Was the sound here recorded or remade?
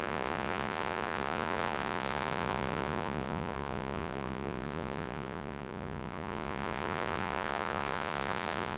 remade